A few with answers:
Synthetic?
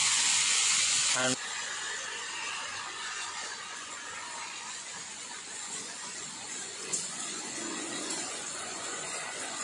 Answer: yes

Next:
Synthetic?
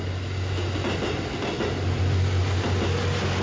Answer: no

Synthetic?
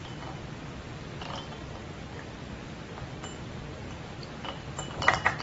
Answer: no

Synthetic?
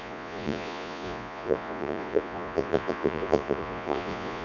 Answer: yes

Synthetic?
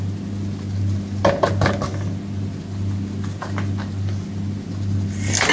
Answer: no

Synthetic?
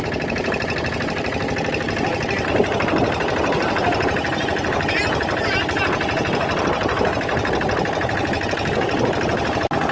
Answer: no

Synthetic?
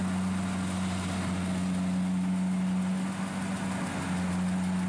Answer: no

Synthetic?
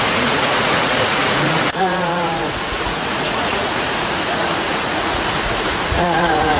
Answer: yes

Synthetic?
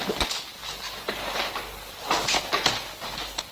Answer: no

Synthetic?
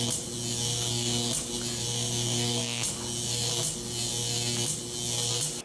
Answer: no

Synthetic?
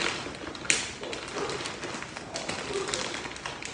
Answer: no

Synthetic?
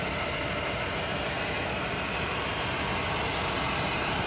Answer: no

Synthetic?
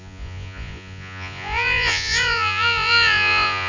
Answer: yes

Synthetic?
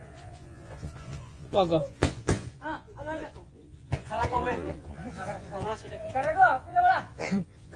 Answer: yes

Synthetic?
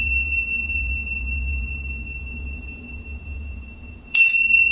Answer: yes